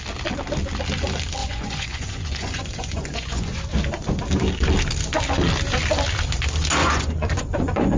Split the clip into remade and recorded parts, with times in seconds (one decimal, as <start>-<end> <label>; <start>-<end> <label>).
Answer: 0.0-1.4 recorded; 1.4-3.6 remade; 3.6-6.8 recorded; 6.8-8.0 remade